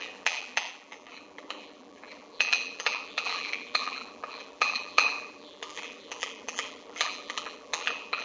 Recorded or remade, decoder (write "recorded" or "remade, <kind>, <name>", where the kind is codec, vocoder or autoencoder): remade, vocoder, BigVGAN v2